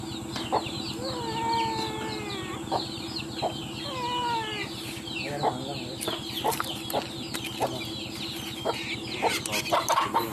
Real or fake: real